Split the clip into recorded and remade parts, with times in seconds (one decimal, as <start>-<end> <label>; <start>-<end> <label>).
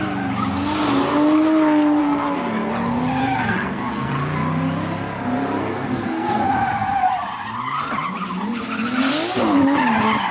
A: 0.0-2.0 recorded; 2.0-2.7 remade; 2.7-3.2 recorded; 3.2-4.1 remade; 4.1-5.6 recorded; 5.6-6.5 remade; 6.5-10.3 recorded